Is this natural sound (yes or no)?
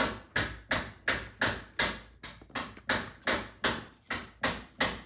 yes